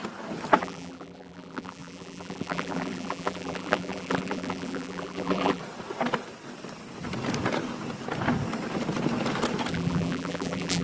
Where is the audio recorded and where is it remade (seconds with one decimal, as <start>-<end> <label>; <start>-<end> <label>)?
0.0-0.6 recorded; 0.6-5.6 remade; 5.6-9.7 recorded; 9.7-10.8 remade